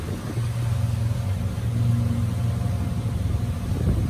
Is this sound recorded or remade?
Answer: recorded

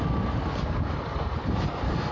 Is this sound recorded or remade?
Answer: recorded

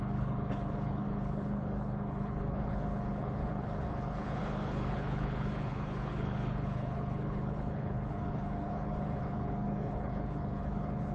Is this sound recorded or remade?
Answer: remade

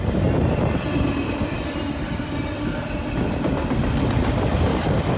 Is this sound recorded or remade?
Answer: recorded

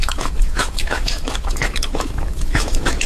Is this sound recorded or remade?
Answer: remade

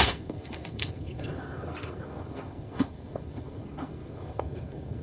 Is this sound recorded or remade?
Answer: remade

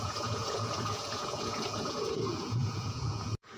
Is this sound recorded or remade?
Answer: remade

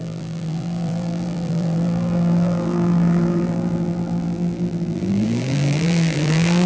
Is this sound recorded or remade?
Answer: remade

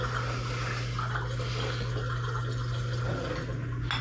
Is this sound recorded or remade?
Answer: recorded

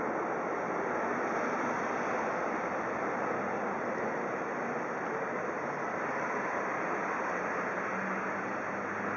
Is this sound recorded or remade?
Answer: recorded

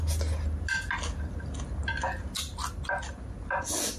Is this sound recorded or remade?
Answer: recorded